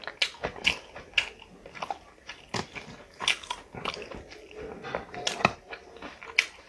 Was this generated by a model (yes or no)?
no